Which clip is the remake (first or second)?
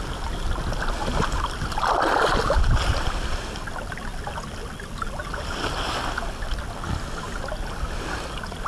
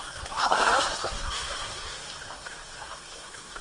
second